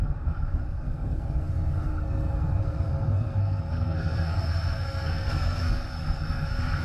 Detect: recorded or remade remade